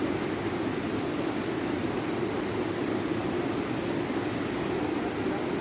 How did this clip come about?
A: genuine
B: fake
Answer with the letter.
A